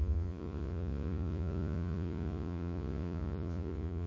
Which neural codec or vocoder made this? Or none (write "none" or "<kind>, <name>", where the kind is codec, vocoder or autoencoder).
vocoder, Vocos